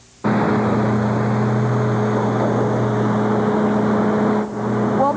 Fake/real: real